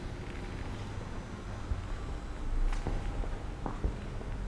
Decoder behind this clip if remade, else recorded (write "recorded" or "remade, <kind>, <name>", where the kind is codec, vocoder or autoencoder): recorded